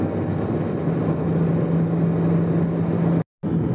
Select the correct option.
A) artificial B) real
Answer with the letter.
B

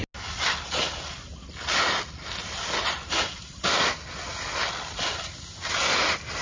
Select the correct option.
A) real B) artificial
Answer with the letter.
A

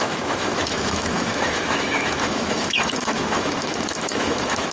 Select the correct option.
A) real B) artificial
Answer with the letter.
B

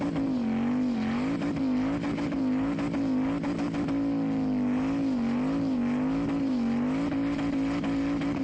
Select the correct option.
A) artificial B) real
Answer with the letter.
B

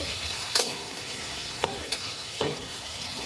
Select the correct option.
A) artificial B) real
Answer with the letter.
A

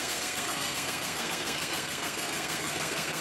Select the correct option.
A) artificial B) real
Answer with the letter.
A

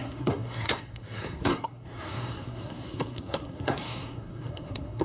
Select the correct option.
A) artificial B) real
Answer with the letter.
A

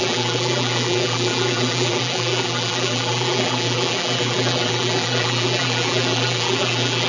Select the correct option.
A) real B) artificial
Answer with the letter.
B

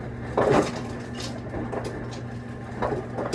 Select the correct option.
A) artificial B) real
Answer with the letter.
B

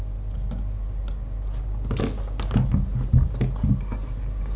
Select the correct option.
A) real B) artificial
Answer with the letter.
A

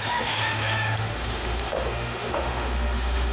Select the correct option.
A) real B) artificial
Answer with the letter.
B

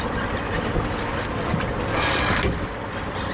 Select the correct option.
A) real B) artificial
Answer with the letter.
A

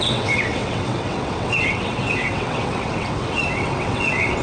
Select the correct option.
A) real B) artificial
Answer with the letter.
B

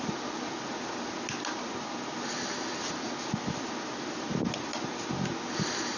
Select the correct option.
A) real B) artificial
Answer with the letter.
A